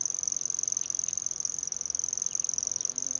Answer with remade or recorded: recorded